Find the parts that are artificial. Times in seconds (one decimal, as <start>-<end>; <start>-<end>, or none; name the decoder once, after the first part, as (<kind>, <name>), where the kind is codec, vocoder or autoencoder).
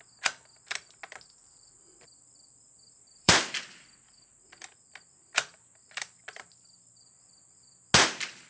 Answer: 1.4-3.3 (vocoder, BigVGAN v2); 5.8-7.2